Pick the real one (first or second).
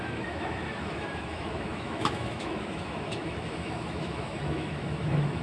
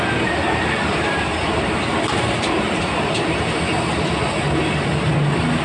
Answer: second